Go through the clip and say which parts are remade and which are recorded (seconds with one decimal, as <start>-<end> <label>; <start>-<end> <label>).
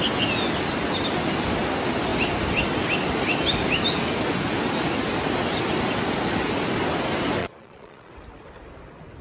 0.0-7.4 recorded; 7.4-8.1 remade; 8.1-9.2 recorded